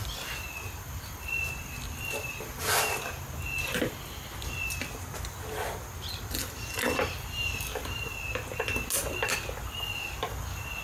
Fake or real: real